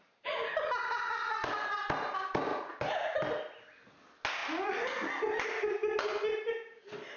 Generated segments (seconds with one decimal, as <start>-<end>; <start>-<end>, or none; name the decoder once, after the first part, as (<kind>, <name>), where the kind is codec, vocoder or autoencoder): 2.5-3.2 (vocoder, Vocos)